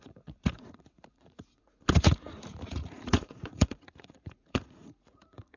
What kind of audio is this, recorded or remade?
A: remade